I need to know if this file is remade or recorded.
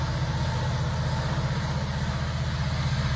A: recorded